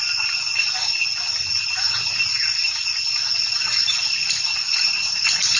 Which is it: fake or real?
real